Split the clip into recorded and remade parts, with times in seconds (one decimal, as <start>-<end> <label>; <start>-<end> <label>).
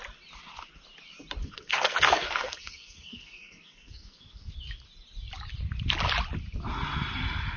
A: 0.0-1.4 recorded; 1.4-4.5 remade; 4.5-7.6 recorded